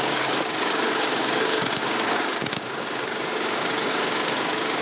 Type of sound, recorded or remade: remade